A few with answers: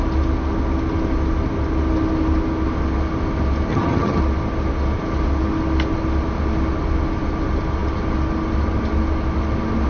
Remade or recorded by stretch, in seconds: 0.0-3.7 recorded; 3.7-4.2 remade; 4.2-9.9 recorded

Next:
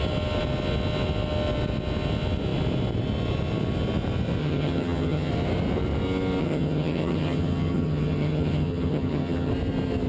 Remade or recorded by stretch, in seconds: 0.0-4.4 recorded; 4.4-5.3 remade; 5.3-6.4 recorded; 6.4-9.5 remade; 9.5-10.1 recorded